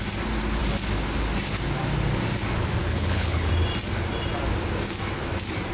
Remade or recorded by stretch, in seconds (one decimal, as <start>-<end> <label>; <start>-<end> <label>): 0.0-2.8 recorded; 2.8-3.5 remade; 3.5-5.7 recorded